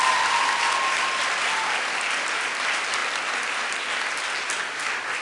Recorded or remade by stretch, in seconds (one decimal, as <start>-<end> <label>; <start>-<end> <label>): 0.0-5.2 recorded